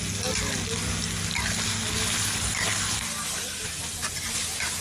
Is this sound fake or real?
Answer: real